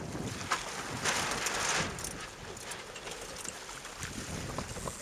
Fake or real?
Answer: real